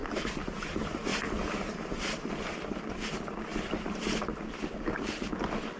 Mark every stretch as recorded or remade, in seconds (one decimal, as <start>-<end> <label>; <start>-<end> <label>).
0.0-5.8 recorded